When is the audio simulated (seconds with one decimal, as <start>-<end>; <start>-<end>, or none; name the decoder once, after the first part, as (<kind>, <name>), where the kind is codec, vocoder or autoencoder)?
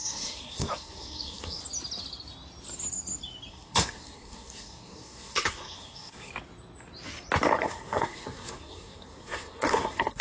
0.0-1.6 (codec, SNAC); 3.5-6.3; 7.6-10.2